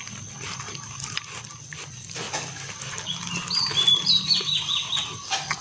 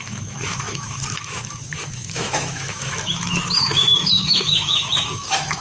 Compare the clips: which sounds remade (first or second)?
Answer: second